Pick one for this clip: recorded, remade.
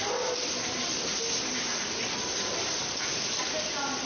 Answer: recorded